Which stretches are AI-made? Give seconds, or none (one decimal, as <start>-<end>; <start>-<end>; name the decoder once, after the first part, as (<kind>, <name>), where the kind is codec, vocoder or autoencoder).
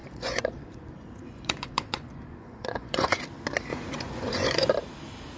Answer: 0.0-3.2 (vocoder, Vocos); 3.7-4.7